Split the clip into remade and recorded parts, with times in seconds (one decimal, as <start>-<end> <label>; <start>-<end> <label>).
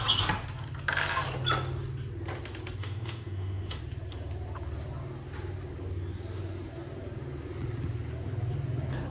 0.0-2.8 recorded; 2.8-3.8 remade; 3.8-9.1 recorded